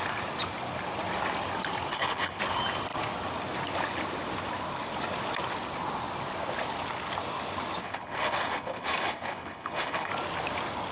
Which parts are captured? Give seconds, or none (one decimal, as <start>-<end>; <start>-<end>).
0.0-1.9; 2.4-7.8; 10.1-10.9

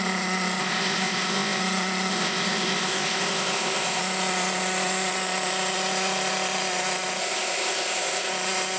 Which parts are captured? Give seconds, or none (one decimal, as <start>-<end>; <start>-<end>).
0.0-0.6; 1.6-2.1; 4.0-7.2; 8.3-8.8

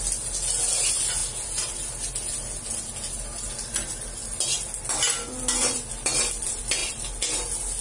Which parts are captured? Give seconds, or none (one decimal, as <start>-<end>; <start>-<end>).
0.0-7.8

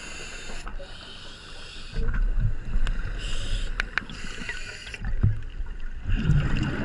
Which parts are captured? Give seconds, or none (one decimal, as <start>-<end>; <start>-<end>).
0.0-6.8

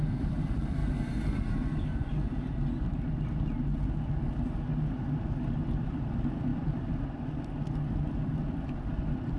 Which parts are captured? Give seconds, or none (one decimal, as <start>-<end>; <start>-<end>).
0.8-5.8

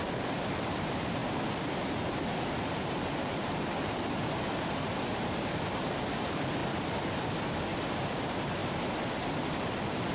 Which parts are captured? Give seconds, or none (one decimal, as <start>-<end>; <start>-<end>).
1.2-2.3; 6.6-8.1; 8.6-9.1

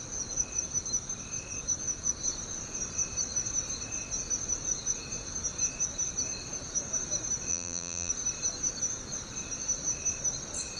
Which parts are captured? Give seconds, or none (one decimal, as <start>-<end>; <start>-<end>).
0.0-7.5; 8.1-10.8

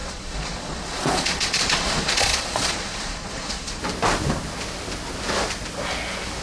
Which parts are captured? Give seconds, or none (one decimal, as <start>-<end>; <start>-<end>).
3.8-6.4